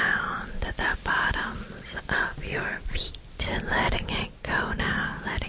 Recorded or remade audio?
recorded